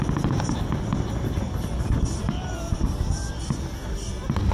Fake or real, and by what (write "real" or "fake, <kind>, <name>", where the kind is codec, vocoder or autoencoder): real